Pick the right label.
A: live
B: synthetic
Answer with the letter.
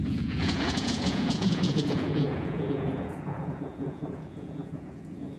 B